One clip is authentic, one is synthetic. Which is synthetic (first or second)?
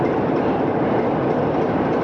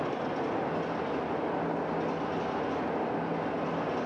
first